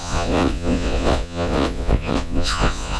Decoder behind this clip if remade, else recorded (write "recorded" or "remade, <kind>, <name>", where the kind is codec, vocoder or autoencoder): remade, vocoder, Vocos